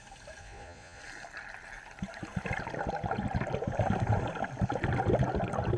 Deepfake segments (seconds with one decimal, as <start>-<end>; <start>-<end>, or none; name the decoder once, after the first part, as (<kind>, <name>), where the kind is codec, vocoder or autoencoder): 0.4-1.0 (vocoder, Vocos)